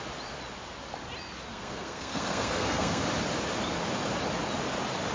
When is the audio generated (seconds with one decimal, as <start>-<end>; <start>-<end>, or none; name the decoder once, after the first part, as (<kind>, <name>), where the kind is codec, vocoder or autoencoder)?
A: 1.5-3.0 (codec, SNAC)